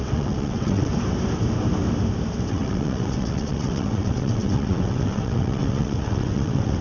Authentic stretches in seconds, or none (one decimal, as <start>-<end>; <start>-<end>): 0.9-2.5